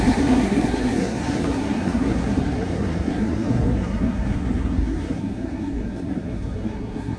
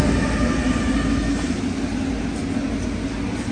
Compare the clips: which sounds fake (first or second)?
first